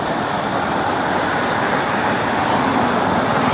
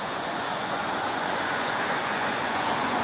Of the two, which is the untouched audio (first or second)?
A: first